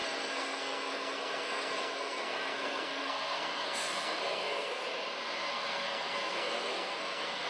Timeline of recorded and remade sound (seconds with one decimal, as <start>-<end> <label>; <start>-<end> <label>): 0.0-4.8 remade; 4.8-5.5 recorded; 5.5-7.5 remade